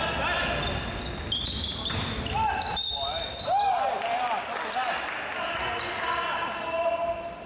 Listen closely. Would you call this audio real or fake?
real